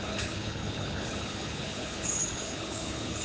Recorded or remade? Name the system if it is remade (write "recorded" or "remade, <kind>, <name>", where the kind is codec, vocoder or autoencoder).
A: remade, codec, HILCodec